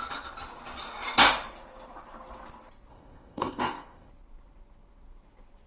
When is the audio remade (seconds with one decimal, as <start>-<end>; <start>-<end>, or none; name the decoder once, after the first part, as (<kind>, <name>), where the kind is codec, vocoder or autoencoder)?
2.9-4.1 (codec, ZipCodec)